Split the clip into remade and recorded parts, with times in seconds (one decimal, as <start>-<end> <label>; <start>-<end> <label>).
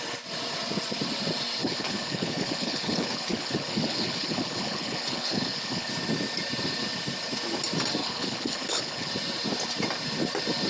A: 0.0-1.6 recorded; 1.6-5.9 remade; 5.9-8.0 recorded; 8.0-9.1 remade; 9.1-10.7 recorded